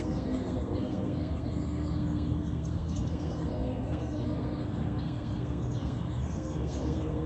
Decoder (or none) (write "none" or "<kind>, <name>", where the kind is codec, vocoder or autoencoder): codec, SNAC